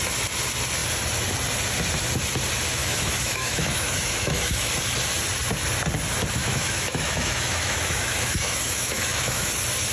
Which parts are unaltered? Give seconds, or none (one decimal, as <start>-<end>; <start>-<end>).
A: 0.0-2.8; 4.7-6.4; 9.5-9.9